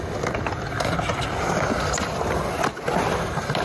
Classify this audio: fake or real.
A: fake